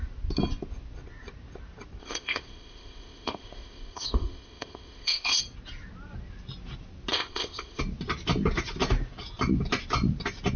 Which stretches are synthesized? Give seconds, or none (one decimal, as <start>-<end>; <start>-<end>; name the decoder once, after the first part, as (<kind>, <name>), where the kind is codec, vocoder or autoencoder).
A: 2.0-5.4 (codec, ZipCodec); 7.1-7.8